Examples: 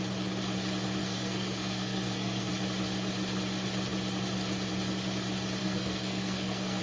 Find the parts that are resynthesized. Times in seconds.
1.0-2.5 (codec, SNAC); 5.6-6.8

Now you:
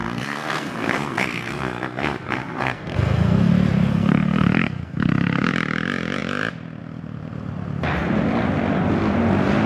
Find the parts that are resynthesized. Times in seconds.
0.0-3.5 (codec, SNAC); 3.9-5.5

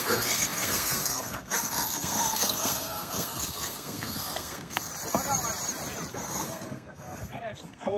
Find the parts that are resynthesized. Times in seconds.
0.0-4.9 (codec, SNAC); 6.1-8.0

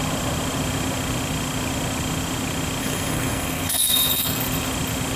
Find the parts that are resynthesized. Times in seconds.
2.8-4.4 (codec, SNAC)

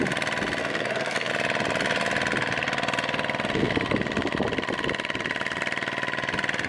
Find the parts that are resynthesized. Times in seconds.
0.6-1.3 (codec, SNAC)

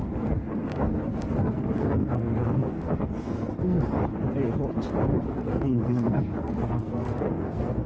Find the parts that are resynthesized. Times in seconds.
0.0-3.8 (codec, SNAC); 5.1-7.9

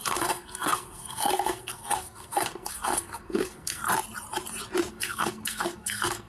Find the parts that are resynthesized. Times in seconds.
0.0-3.8 (codec, SNAC); 4.9-6.3